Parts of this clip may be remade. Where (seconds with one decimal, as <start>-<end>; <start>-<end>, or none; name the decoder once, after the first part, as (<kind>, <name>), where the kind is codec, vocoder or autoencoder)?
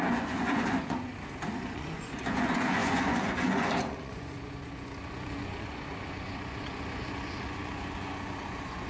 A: 0.0-1.1 (vocoder, Vocos); 1.6-8.9